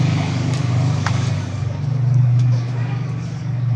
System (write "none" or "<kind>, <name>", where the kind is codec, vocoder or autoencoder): codec, DAC